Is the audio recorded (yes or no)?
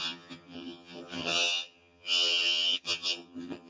no